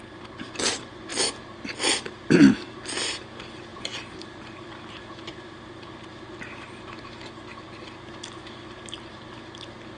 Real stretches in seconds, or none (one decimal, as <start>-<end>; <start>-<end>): 0.0-3.7; 5.9-10.0